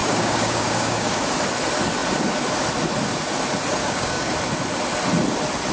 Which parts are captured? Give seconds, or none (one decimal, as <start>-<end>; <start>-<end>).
1.2-3.8; 4.3-5.7